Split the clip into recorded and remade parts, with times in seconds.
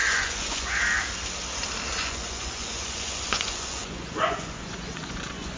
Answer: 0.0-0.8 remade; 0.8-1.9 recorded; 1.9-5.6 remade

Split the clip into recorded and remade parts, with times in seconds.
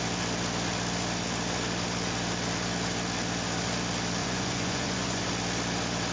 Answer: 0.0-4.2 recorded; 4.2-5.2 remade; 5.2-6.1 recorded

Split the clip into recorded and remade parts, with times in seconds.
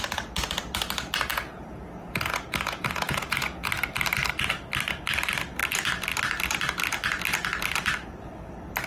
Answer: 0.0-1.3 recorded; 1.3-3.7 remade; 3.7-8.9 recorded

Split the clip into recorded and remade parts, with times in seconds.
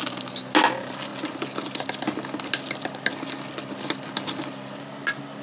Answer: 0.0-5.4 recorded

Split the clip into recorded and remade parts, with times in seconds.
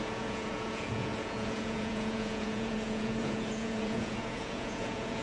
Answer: 0.0-5.2 remade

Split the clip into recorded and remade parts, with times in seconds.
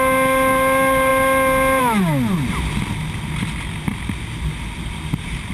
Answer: 0.0-5.5 recorded